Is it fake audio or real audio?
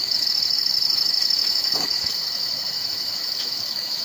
fake